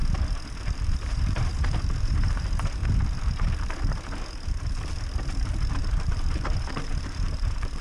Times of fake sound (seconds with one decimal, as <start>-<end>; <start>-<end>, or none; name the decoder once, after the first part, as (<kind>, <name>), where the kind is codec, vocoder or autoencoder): 0.6-2.8 (vocoder, BigVGAN v2); 5.8-7.8